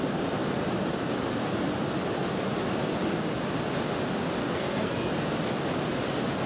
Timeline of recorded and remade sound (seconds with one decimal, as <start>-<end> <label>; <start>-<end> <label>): 0.0-4.4 recorded; 4.4-5.1 remade; 5.1-6.5 recorded